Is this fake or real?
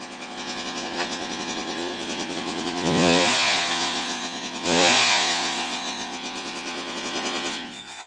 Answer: fake